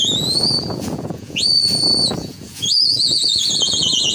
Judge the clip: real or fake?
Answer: fake